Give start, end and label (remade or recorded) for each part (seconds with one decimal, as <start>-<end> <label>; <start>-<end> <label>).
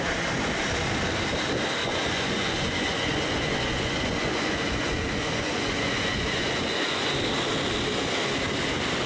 0.0-1.8 recorded; 1.8-7.1 remade; 7.1-9.1 recorded